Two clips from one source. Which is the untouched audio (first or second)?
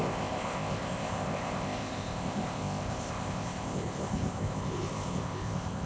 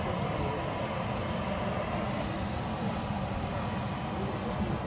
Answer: second